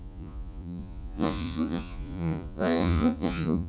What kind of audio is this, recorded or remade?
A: remade